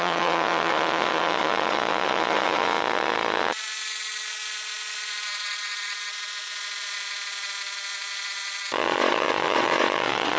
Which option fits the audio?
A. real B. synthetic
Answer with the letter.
B